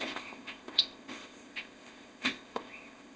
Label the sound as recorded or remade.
remade